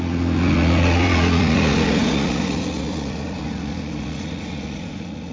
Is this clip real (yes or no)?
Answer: no